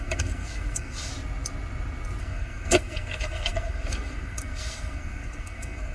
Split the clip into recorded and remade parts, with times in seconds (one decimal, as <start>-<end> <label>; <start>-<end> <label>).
0.0-1.1 remade; 1.1-2.2 recorded; 2.2-5.9 remade